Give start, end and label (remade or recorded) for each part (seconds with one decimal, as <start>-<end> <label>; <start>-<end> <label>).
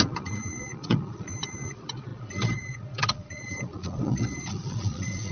0.0-5.3 remade